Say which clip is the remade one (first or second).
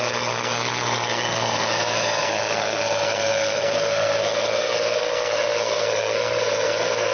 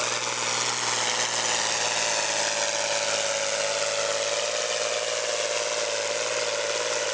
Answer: first